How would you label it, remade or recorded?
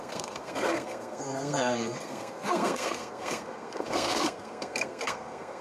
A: remade